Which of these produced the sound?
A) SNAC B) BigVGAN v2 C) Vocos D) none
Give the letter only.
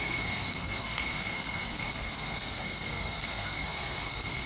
A